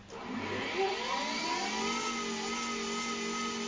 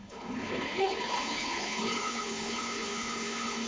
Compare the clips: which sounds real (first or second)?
first